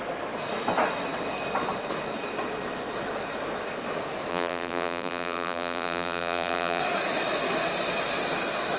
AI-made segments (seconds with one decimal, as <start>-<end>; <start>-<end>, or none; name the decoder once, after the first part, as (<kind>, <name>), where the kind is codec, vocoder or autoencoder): 4.3-6.8 (vocoder, BigVGAN v2)